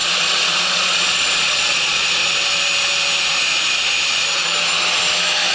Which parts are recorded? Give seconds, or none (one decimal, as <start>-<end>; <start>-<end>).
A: 2.2-5.5